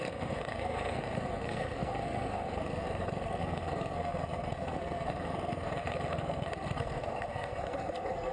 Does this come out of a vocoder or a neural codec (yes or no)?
yes